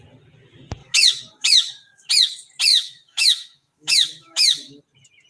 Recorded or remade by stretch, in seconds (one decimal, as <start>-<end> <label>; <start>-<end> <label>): 0.0-0.8 recorded; 0.8-2.1 remade; 2.1-2.7 recorded; 2.7-4.8 remade; 4.8-5.3 recorded